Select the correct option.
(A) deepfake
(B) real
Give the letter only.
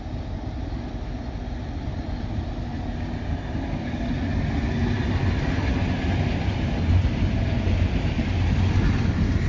B